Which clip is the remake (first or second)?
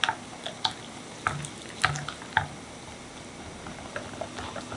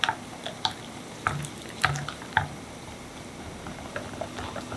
second